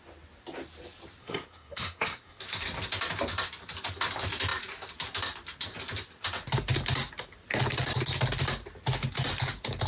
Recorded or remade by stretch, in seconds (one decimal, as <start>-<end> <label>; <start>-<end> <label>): 0.0-1.2 recorded; 1.2-2.4 remade; 2.4-9.9 recorded